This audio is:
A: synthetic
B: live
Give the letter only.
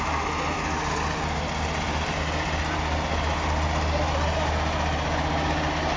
B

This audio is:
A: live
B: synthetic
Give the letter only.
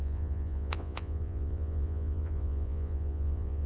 B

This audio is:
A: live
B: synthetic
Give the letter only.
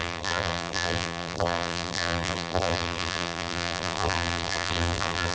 B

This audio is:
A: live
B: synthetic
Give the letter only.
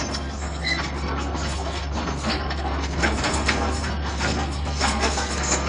B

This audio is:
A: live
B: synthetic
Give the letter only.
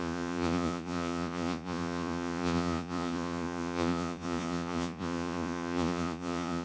B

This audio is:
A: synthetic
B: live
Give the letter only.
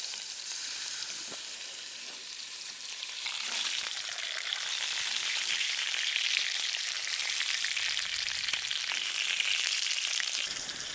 A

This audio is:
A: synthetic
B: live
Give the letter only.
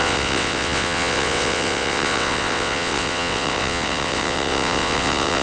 A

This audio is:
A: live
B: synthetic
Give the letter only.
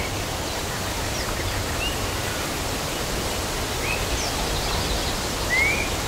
A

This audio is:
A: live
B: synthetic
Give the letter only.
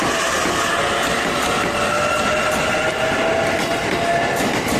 A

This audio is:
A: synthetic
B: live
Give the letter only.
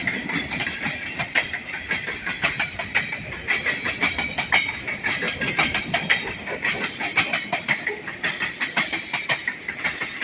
A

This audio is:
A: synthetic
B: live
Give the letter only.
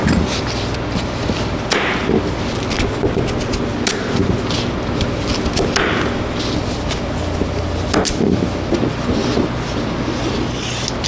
B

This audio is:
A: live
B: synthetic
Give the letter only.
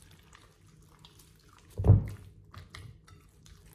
A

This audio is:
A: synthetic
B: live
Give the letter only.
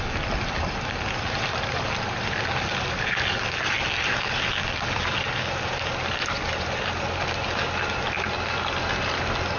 B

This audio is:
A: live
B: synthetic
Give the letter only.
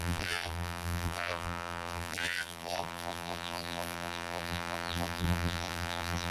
B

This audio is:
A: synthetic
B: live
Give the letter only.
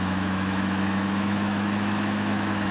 A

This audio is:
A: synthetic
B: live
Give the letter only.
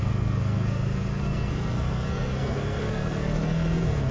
A